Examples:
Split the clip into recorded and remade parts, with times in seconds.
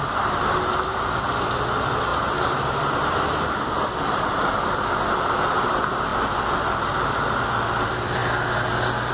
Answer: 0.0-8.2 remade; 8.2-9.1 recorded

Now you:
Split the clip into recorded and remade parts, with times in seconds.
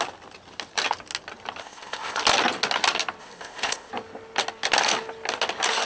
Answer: 0.0-1.6 recorded; 1.6-2.2 remade; 2.2-3.2 recorded; 3.2-3.9 remade; 3.9-5.9 recorded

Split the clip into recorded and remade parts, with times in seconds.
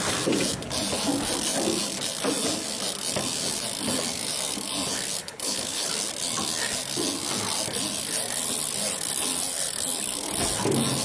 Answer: 0.0-5.2 recorded; 5.2-5.9 remade; 5.9-11.0 recorded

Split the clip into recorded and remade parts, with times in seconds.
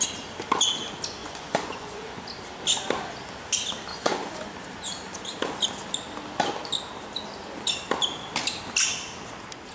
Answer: 0.0-1.2 recorded; 1.2-2.2 remade; 2.2-3.9 recorded; 3.9-4.5 remade; 4.5-9.7 recorded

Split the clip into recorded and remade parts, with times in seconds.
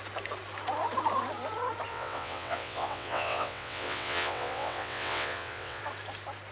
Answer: 0.0-1.9 recorded; 1.9-5.8 remade; 5.8-6.5 recorded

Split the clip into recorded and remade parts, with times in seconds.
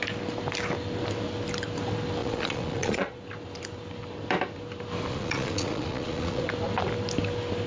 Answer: 0.0-2.2 recorded; 2.2-3.2 remade; 3.2-5.1 recorded; 5.1-6.4 remade; 6.4-7.7 recorded